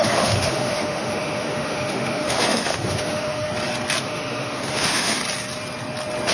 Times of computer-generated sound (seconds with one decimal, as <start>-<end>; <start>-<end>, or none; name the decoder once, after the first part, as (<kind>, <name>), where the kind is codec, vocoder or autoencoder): 0.0-3.5 (autoencoder, DAC-VAE); 4.0-5.2